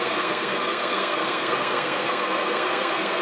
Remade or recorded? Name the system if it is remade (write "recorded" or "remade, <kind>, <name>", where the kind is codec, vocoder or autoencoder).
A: remade, codec, SNAC